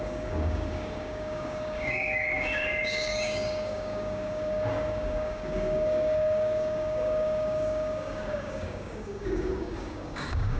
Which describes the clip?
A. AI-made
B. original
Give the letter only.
A